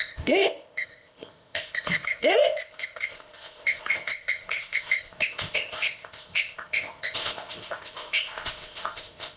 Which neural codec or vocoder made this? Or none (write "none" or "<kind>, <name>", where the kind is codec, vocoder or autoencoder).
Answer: codec, ZipCodec